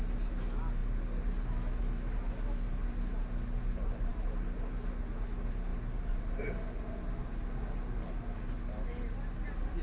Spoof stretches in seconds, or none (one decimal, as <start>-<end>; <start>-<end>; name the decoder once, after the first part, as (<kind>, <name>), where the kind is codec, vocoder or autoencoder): none